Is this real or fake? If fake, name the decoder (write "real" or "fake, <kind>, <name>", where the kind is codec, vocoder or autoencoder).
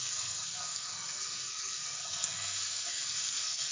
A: fake, codec, SNAC